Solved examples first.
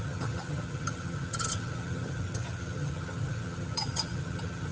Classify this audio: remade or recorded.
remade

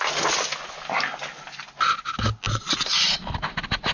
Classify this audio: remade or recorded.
recorded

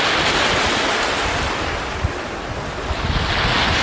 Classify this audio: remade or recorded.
recorded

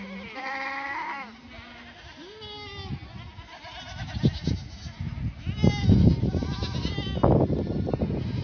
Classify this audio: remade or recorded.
recorded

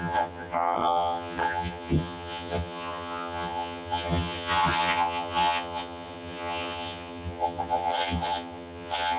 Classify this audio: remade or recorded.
remade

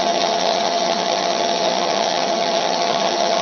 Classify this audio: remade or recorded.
remade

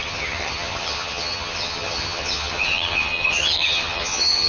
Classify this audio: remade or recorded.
remade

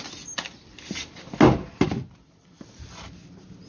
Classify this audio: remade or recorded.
recorded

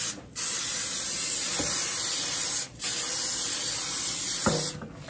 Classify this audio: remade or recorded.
recorded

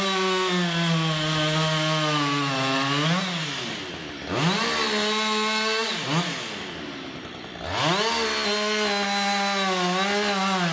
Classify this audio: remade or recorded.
recorded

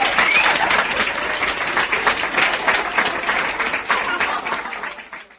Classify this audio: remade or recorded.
recorded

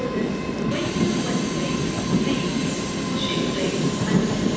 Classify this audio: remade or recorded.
recorded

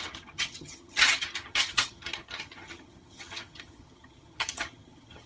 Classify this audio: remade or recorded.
remade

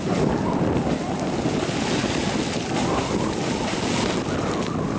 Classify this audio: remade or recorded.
recorded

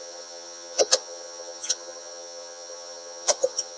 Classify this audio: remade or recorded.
remade